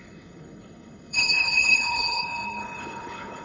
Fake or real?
fake